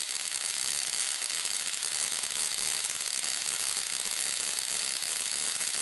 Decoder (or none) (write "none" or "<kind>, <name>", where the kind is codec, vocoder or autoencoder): autoencoder, DAC-VAE